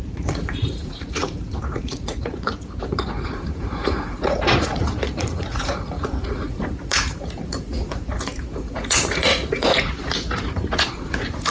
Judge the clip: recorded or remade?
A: remade